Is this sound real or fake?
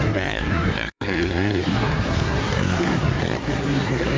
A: fake